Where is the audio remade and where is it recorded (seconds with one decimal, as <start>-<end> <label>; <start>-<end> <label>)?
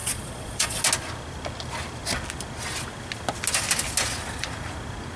0.0-0.8 remade; 0.8-5.2 recorded